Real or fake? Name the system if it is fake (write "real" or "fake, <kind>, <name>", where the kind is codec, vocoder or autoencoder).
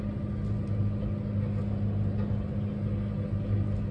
real